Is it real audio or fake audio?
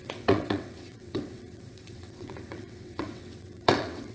fake